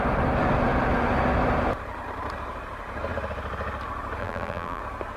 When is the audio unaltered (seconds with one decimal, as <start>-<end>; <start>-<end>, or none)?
0.0-4.2; 4.8-5.2